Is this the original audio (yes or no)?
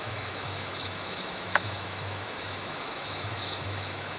no